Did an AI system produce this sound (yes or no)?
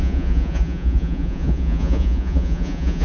yes